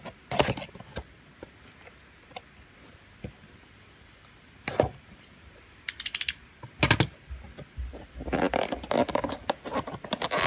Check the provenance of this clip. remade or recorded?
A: recorded